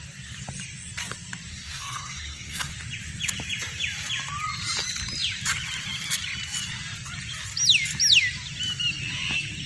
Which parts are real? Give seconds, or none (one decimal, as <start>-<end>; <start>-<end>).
0.0-1.5; 2.7-9.7